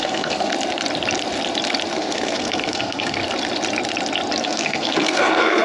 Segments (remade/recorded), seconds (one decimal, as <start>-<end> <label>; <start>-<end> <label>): 0.0-0.5 remade; 0.5-1.9 recorded; 1.9-3.2 remade; 3.2-4.4 recorded; 4.4-5.6 remade